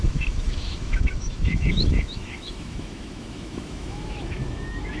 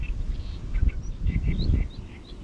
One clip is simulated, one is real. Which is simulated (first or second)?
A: first